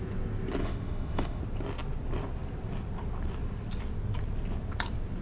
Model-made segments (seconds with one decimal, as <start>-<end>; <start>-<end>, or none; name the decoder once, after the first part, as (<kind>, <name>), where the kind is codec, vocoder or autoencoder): 0.6-1.4 (autoencoder, DAC-VAE)